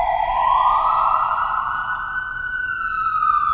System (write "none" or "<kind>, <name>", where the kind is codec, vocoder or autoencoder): none